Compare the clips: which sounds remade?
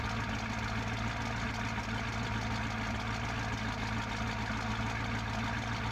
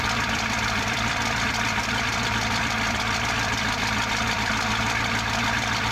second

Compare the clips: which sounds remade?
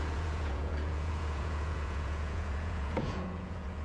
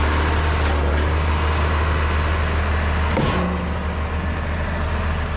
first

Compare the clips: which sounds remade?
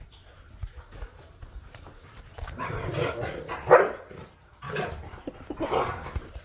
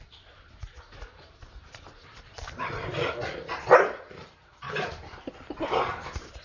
second